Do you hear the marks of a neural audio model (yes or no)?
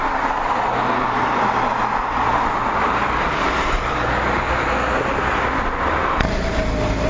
no